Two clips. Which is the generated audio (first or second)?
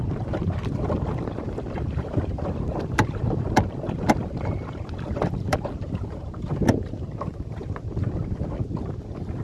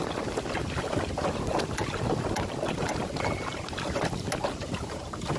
first